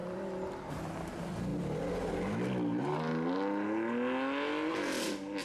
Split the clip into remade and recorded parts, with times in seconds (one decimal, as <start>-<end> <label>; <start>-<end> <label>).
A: 0.0-0.8 remade; 0.8-5.4 recorded